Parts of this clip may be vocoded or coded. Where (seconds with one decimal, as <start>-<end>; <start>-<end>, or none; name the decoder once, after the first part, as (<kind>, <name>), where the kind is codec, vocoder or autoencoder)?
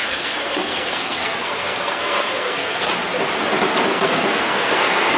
0.0-2.9 (codec, SNAC); 3.9-5.2